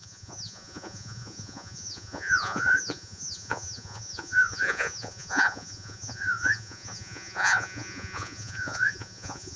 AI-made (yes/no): yes